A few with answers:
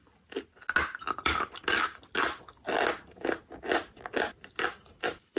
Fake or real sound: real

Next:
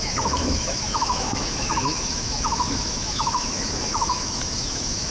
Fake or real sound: fake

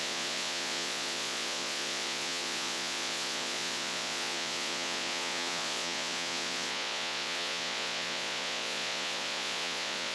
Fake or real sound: fake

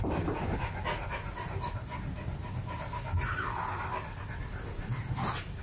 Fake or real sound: real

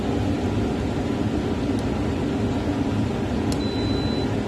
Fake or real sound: real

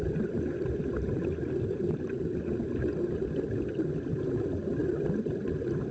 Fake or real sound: real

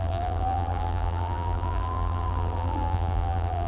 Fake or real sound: fake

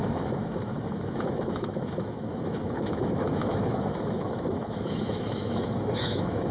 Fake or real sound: fake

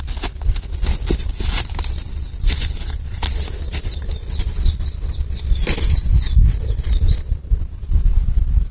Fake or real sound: real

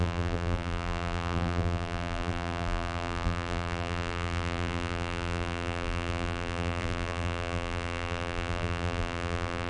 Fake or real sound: fake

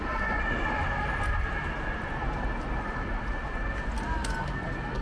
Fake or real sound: real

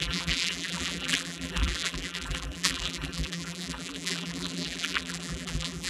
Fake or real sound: fake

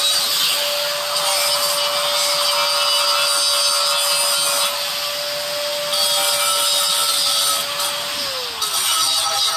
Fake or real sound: real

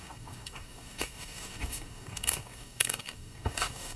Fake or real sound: fake